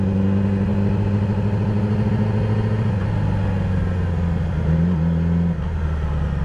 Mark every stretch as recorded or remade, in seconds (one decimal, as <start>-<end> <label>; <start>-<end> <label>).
0.0-6.4 recorded